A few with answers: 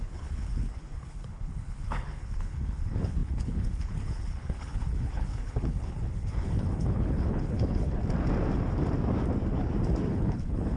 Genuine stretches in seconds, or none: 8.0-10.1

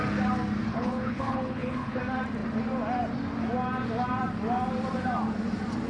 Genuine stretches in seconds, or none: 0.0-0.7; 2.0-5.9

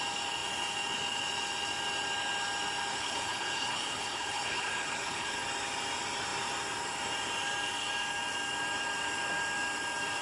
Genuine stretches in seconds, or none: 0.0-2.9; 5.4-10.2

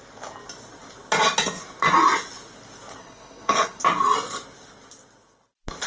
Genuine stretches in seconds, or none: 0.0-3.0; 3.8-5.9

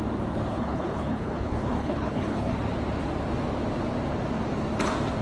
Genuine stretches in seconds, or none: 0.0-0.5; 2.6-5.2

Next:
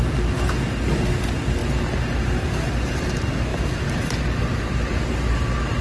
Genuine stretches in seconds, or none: 0.0-5.8